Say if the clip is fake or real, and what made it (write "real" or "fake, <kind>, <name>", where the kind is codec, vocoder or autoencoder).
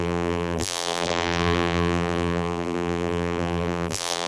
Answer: fake, vocoder, BigVGAN v2